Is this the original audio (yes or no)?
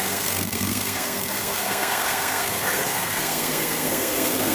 no